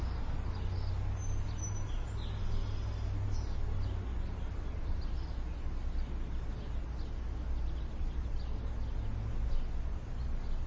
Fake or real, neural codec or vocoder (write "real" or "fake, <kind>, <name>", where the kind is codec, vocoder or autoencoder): real